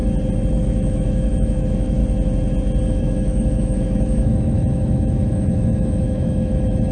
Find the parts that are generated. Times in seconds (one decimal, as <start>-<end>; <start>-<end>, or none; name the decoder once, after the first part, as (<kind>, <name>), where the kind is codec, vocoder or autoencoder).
0.6-2.0 (autoencoder, DAC-VAE); 2.9-6.9